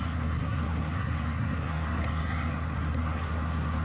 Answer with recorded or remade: remade